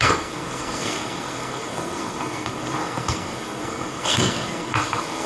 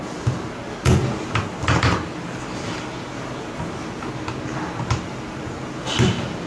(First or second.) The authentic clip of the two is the second